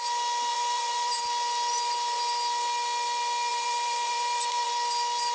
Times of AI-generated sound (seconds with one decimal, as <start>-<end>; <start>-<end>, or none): 0.5-1.2; 3.5-4.7